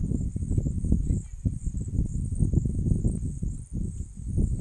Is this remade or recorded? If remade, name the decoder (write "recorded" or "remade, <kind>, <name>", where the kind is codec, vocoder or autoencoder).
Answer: recorded